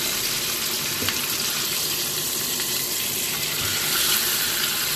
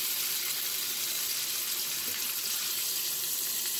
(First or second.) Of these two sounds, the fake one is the first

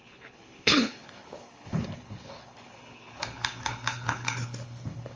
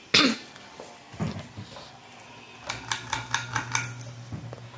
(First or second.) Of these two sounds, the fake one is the first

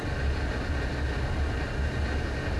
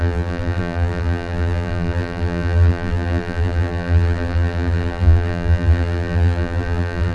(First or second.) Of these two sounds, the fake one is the second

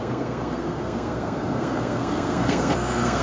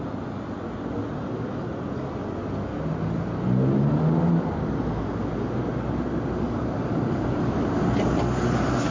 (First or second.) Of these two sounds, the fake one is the first